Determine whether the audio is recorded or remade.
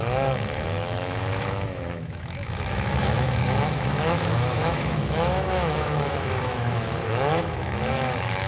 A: remade